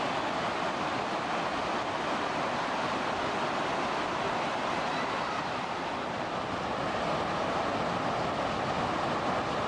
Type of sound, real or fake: real